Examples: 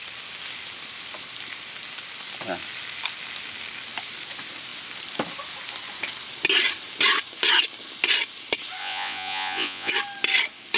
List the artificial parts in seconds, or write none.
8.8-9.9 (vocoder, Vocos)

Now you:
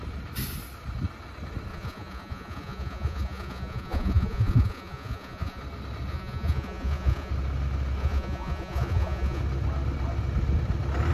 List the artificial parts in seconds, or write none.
1.7-5.6 (vocoder, Vocos); 6.1-7.3; 8.0-9.4

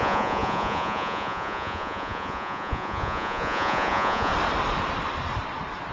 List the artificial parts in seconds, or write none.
0.0-4.3 (vocoder, Vocos)

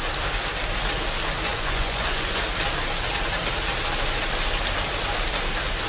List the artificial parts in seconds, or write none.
1.5-2.4 (vocoder, Vocos)

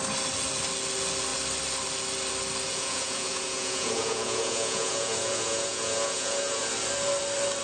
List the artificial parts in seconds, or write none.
2.7-6.6 (vocoder, Vocos)

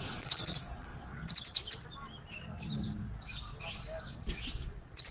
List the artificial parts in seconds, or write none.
0.0-0.9 (vocoder, Vocos); 4.0-5.1

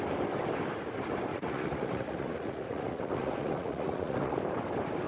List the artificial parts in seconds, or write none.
1.3-4.4 (vocoder, Vocos)